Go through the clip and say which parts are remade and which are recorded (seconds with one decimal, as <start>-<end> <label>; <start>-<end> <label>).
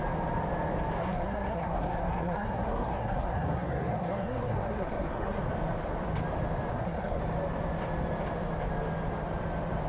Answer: 0.0-1.0 recorded; 1.0-5.4 remade; 5.4-6.7 recorded; 6.7-7.2 remade; 7.2-9.9 recorded